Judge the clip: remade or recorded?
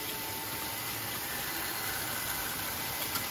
recorded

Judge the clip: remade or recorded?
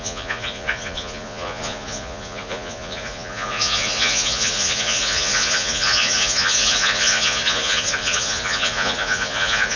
remade